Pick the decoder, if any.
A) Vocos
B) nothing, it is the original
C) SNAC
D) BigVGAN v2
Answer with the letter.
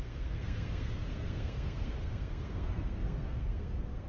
C